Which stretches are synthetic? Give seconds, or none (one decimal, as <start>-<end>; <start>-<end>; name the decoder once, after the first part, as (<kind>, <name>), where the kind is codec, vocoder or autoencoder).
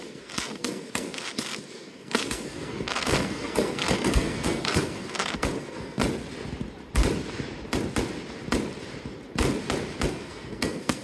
0.0-6.0 (codec, SNAC); 10.1-11.0